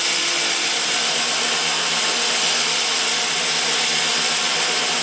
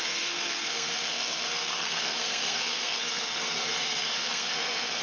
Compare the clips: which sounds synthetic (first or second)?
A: second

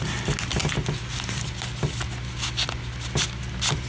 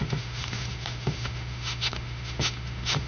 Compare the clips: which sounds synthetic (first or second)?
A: second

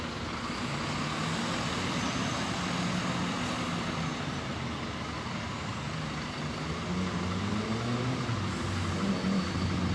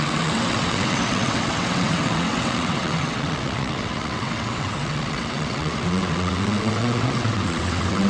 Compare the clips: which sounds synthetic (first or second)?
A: second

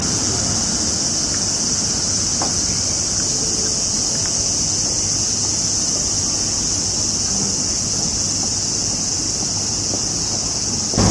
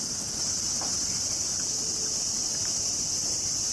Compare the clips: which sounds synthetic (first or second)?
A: second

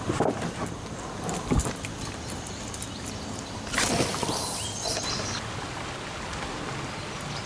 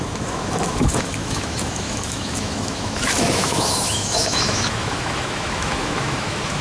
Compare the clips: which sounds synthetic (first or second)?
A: second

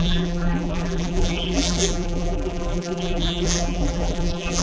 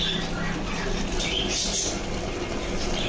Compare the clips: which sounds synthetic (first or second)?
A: first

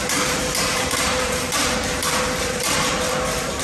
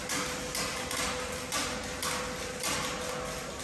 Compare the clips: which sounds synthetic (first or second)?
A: first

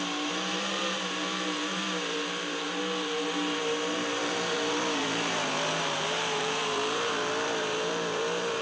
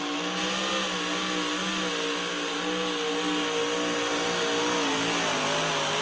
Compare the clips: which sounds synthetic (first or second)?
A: first